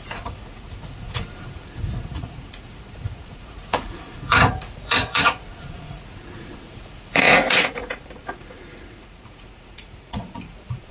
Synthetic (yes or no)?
yes